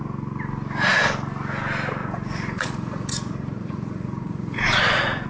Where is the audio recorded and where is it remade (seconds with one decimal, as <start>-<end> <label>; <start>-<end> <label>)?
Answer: 0.0-2.0 recorded; 2.0-5.3 remade